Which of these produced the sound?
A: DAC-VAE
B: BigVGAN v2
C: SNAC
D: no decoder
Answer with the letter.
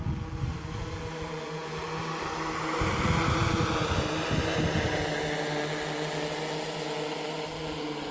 D